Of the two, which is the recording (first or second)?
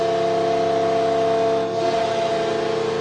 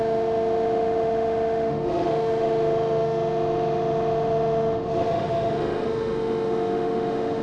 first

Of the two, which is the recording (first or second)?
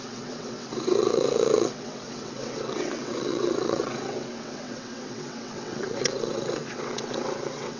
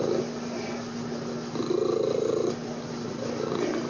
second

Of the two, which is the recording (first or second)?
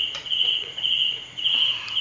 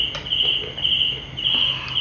second